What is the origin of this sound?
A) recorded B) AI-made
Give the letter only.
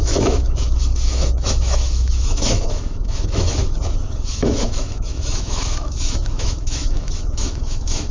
B